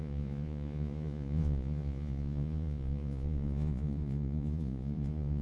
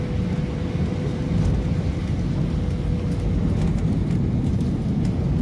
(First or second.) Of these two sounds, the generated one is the first